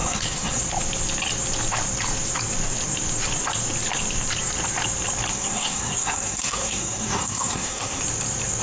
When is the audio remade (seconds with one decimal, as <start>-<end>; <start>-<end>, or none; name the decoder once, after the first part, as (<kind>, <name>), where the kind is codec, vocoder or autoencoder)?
0.0-0.6 (codec, SNAC); 5.3-8.0

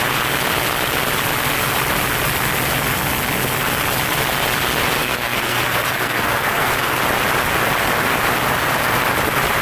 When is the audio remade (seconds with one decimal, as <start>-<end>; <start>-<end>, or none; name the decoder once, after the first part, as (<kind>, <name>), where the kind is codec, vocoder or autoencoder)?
5.0-7.0 (codec, SNAC)

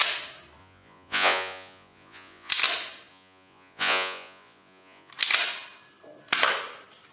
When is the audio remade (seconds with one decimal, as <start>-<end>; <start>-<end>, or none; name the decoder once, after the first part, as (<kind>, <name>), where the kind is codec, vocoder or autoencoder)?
0.6-2.5 (vocoder, Vocos); 3.1-5.1

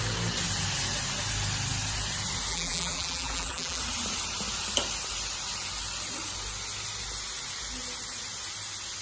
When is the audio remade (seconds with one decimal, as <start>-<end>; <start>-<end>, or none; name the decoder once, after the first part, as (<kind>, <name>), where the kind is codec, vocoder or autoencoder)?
2.5-3.8 (vocoder, BigVGAN v2)

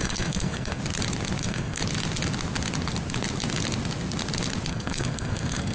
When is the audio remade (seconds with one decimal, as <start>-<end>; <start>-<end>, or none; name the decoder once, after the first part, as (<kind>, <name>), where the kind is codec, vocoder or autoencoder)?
0.0-0.8 (codec, SNAC); 1.4-1.8; 4.7-5.7